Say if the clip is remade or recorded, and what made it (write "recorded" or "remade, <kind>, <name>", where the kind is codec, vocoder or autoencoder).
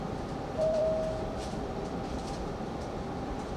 remade, vocoder, BigVGAN v2